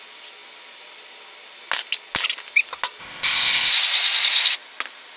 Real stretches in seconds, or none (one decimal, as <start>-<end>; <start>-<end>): 0.0-3.0; 3.7-5.2